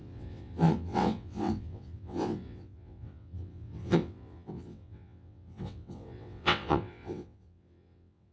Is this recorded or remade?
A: remade